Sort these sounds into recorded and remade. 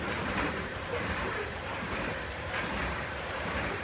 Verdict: recorded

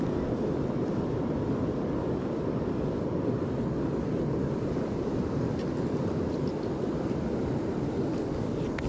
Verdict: recorded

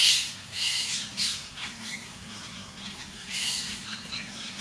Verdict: remade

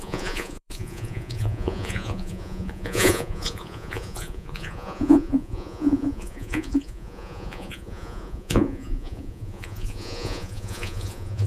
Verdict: remade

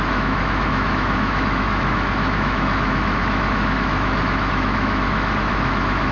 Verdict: remade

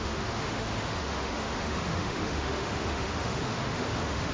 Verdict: remade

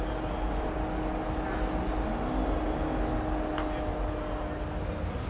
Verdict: recorded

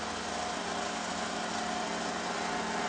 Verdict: recorded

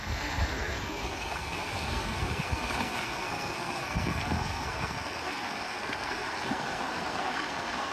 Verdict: remade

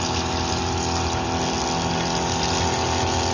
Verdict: recorded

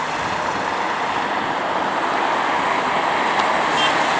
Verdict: recorded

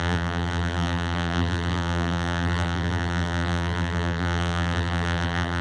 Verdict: remade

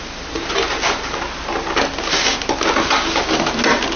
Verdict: recorded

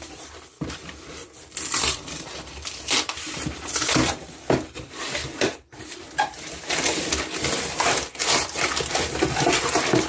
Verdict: remade